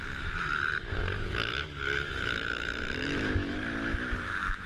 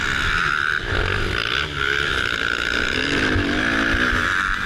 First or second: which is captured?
second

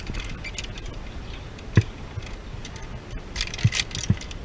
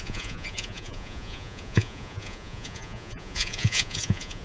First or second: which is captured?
first